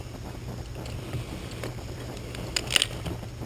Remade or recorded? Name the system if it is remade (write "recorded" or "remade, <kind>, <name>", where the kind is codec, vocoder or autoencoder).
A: recorded